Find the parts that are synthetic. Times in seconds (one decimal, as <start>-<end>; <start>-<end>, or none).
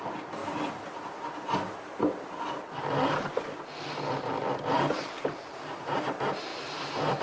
none